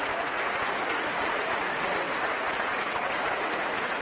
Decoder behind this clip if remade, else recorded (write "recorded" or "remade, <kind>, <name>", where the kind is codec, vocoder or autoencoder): remade, vocoder, Vocos